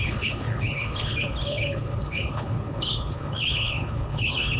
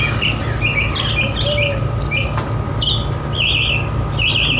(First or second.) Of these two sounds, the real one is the second